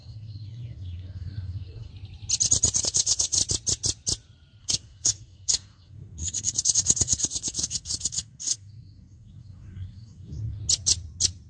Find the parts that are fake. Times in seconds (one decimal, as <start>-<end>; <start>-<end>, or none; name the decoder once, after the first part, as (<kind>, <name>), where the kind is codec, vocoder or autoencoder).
0.0-1.9 (codec, SNAC); 2.8-3.4; 4.6-10.6